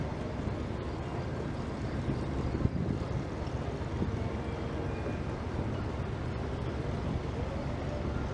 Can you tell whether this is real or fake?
real